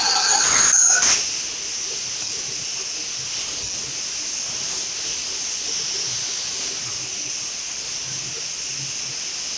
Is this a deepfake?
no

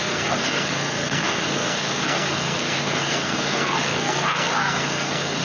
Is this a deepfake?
yes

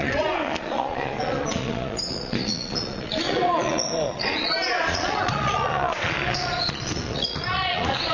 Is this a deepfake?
yes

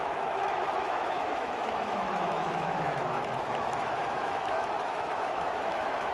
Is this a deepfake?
yes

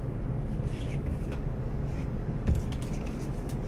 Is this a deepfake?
yes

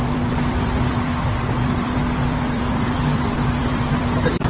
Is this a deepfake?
yes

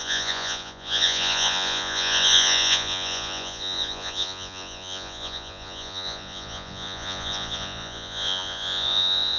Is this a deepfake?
yes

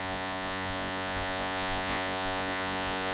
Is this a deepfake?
yes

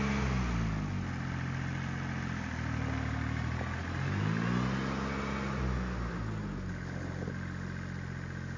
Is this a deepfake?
no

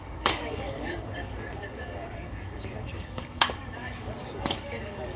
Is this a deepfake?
yes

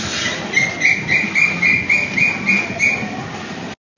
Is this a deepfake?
no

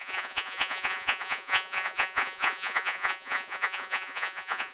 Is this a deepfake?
yes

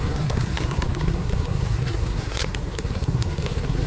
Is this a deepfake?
yes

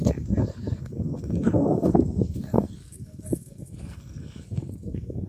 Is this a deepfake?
yes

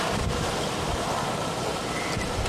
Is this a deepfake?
yes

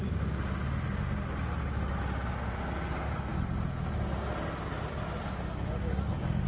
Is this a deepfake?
no